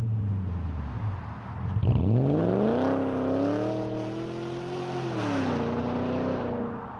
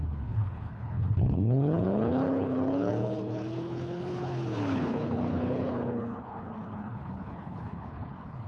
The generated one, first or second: second